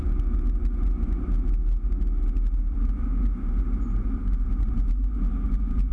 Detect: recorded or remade recorded